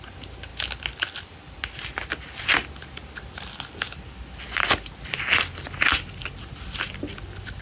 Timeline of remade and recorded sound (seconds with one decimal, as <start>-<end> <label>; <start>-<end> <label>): 0.0-7.6 recorded